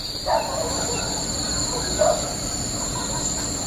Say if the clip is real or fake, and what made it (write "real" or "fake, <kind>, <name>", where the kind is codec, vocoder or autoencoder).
real